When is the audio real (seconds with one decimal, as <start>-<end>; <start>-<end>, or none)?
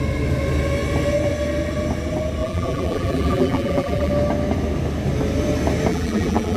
0.0-2.4; 4.1-5.9